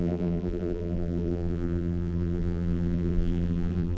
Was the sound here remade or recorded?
remade